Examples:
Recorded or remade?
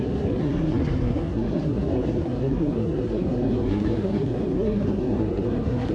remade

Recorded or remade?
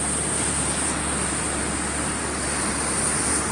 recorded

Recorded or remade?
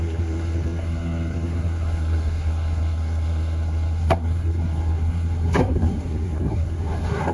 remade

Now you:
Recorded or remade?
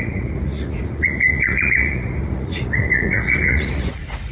remade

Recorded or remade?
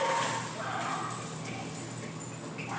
recorded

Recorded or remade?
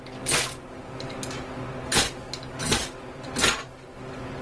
recorded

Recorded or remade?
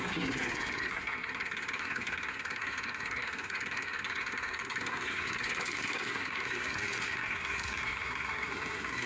remade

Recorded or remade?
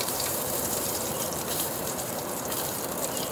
remade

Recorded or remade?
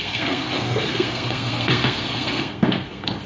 remade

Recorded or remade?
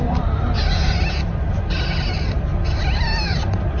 recorded